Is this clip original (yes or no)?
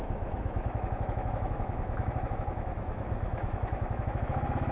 no